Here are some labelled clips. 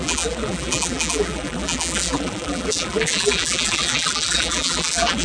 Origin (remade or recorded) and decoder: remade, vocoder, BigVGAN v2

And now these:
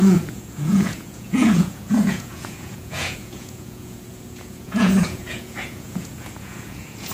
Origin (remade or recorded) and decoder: remade, vocoder, Vocos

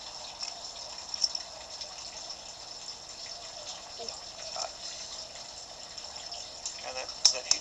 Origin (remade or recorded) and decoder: recorded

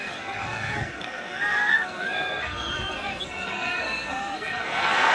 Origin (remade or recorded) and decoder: remade, codec, SNAC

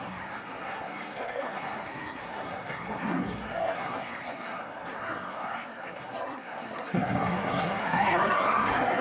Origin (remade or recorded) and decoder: remade, codec, SNAC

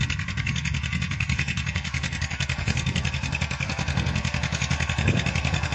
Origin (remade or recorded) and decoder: remade, codec, SNAC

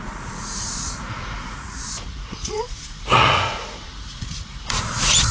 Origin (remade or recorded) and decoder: remade, vocoder, Vocos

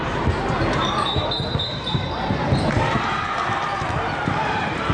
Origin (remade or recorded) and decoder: remade, vocoder, BigVGAN v2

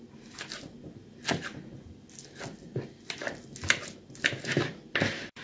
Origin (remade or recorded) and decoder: recorded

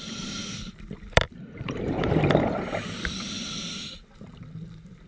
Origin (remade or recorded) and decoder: remade, vocoder, BigVGAN v2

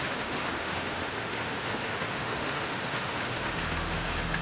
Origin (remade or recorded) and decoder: remade, autoencoder, DAC-VAE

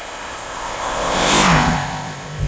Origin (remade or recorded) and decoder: remade, codec, ZipCodec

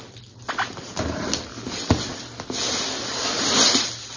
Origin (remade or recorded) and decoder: recorded